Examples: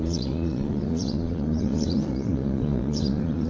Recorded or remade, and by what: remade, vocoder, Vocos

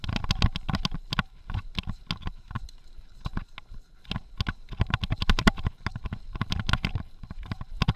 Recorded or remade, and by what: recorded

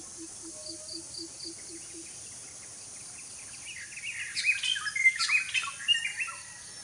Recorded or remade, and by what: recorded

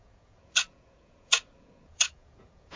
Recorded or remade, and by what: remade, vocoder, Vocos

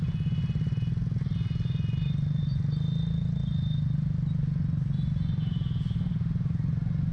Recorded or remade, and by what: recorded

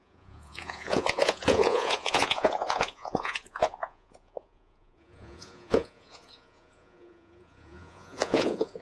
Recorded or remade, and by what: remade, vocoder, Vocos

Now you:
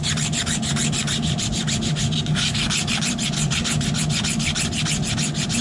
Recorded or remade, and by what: recorded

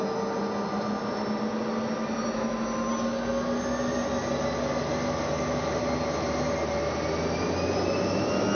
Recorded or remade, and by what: recorded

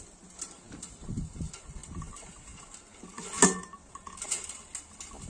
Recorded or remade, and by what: recorded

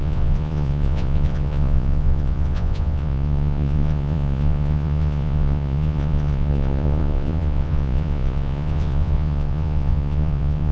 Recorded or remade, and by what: remade, vocoder, Vocos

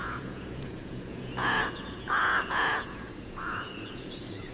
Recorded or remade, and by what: remade, vocoder, Vocos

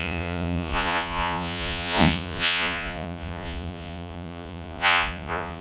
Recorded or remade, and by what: remade, vocoder, Vocos